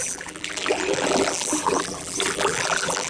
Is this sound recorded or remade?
remade